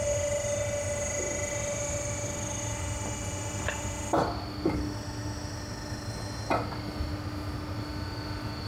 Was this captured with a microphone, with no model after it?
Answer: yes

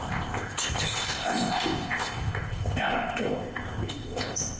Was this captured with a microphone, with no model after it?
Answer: no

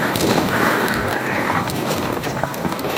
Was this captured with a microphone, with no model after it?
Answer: no